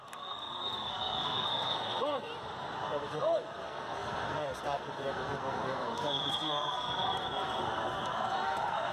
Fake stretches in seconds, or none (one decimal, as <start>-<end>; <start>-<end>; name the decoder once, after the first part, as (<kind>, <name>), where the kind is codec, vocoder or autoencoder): 0.0-2.3 (codec, SNAC); 2.8-8.9